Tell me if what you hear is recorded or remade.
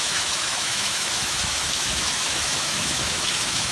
remade